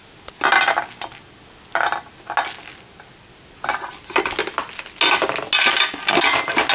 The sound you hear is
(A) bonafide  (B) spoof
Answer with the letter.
A